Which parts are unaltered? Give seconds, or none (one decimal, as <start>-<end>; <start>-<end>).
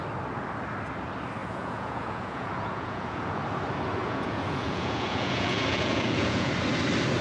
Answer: 0.0-1.4; 3.4-4.0; 6.5-7.2